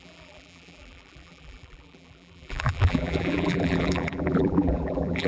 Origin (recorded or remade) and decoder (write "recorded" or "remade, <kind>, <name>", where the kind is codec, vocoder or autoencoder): remade, vocoder, BigVGAN v2